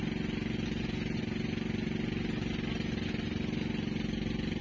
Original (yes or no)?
yes